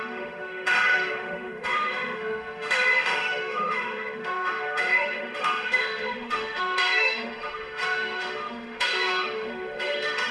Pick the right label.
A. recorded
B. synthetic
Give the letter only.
B